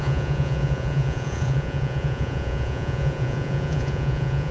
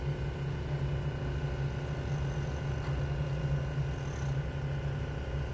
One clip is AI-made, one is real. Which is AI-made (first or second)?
first